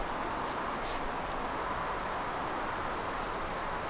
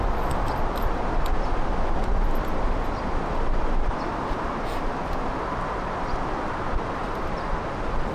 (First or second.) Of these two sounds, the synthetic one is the second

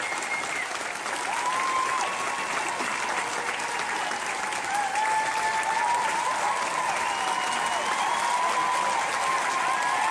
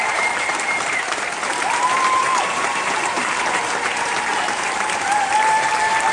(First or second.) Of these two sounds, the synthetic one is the second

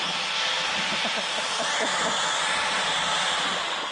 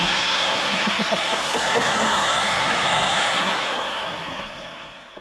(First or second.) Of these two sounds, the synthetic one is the second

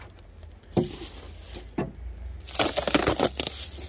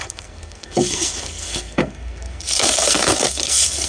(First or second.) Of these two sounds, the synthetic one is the second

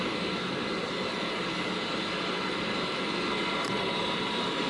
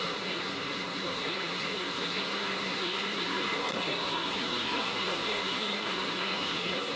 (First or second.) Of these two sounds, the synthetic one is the second